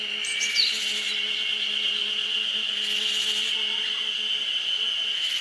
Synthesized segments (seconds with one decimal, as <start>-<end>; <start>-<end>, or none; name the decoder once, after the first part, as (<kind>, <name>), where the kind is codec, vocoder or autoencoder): none